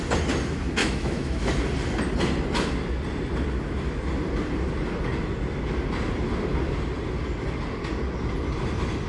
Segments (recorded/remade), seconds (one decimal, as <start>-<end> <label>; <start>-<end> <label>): 0.0-0.8 recorded; 0.8-1.5 remade; 1.5-9.1 recorded